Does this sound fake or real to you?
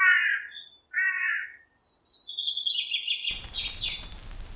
real